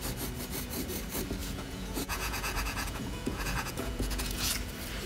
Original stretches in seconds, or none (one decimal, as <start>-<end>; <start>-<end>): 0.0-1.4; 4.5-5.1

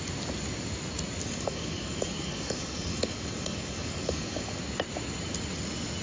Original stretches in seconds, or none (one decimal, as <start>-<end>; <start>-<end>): 0.0-1.2; 4.6-6.0

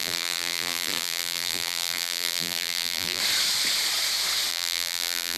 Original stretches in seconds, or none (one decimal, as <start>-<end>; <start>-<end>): 3.2-4.5

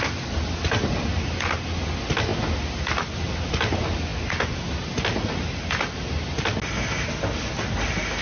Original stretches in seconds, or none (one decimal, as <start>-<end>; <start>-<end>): 0.0-8.2